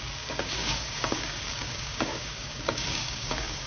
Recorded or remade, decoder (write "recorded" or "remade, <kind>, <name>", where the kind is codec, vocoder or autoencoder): remade, codec, DAC